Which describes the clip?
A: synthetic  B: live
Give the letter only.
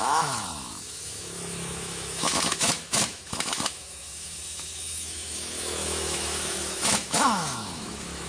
A